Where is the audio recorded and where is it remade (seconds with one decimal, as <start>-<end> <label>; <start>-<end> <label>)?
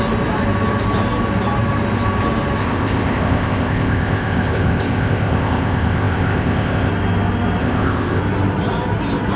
0.0-2.6 recorded; 2.6-6.9 remade; 6.9-7.6 recorded; 7.6-8.2 remade; 8.2-9.4 recorded